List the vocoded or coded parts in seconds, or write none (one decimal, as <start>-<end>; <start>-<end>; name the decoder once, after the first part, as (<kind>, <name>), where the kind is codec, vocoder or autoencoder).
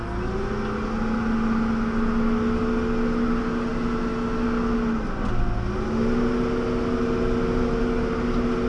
none